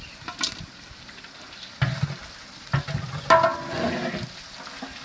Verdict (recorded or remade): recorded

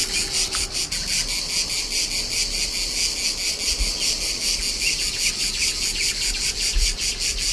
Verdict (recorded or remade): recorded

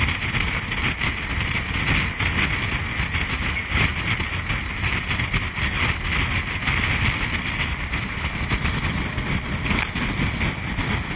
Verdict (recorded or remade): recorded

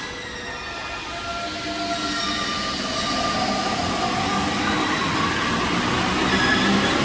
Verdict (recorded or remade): recorded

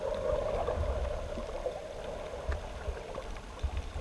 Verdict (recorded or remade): remade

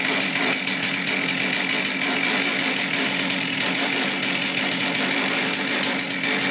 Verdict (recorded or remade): recorded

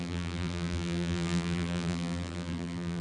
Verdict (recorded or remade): remade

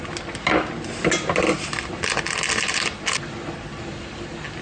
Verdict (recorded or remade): recorded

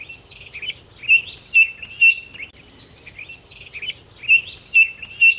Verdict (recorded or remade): recorded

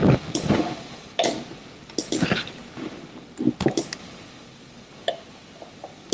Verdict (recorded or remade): recorded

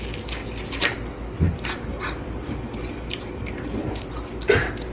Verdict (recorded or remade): remade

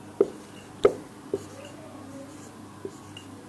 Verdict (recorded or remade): recorded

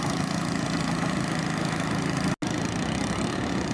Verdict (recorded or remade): recorded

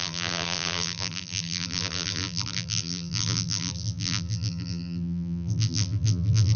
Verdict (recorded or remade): remade